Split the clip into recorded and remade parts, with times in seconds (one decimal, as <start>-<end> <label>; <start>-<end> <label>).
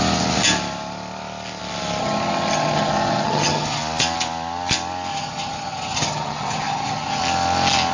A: 0.0-2.0 recorded; 2.0-3.8 remade; 3.8-5.1 recorded; 5.1-7.2 remade; 7.2-7.9 recorded